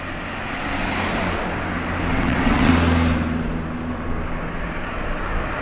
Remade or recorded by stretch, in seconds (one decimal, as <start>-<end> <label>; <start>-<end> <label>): 0.0-2.1 recorded; 2.1-2.7 remade; 2.7-5.6 recorded